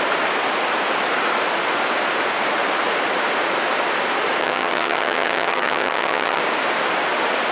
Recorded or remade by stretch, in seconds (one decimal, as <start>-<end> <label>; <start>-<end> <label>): 0.0-4.4 recorded; 4.4-6.4 remade; 6.4-7.5 recorded